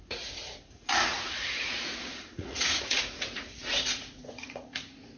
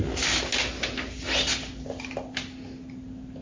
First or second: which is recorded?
second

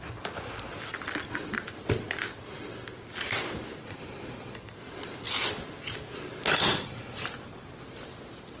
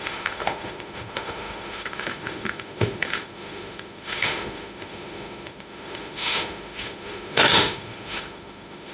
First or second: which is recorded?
first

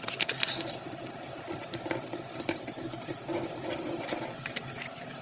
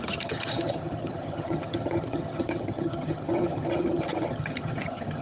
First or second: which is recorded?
first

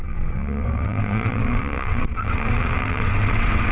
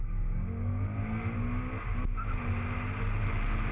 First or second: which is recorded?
second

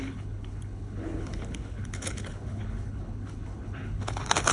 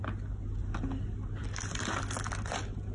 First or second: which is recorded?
second